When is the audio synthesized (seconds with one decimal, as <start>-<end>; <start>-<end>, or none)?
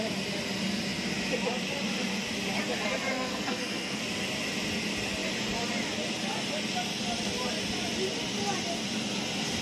3.1-4.0